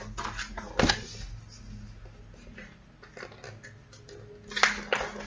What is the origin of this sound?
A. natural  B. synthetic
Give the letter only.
A